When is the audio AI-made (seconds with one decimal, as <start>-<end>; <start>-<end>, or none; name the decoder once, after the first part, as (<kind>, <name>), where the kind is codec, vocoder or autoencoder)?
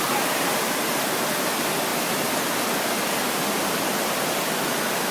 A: none